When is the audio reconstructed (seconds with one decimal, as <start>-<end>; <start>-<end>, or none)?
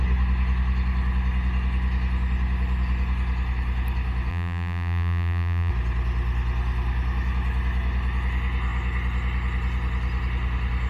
4.3-5.7